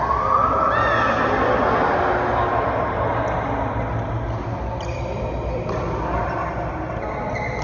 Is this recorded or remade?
recorded